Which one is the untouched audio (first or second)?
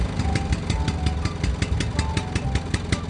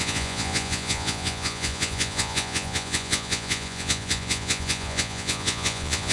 first